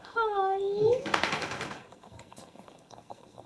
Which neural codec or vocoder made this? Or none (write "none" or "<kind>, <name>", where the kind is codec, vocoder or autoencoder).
codec, SNAC